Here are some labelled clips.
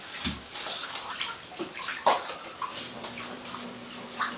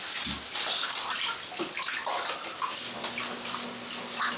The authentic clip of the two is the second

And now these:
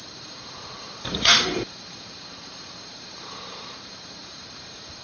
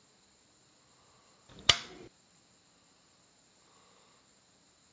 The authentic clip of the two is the second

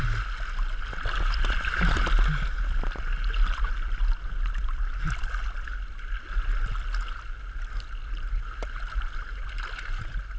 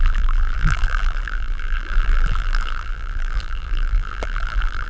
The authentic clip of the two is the first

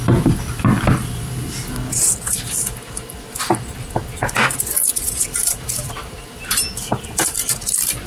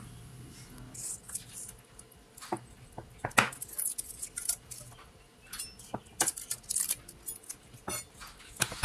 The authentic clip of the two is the second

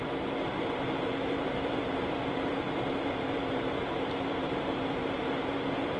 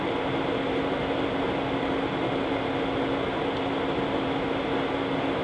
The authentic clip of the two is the second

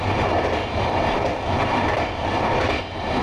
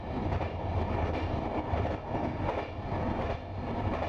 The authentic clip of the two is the second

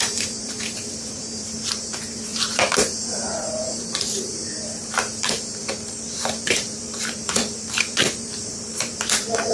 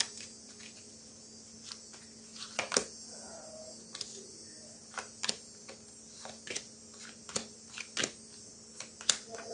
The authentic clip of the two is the second